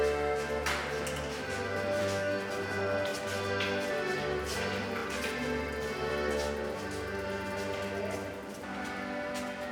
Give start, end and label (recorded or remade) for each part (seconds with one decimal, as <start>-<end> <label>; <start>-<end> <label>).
0.0-2.0 recorded; 2.0-2.5 remade; 2.5-9.7 recorded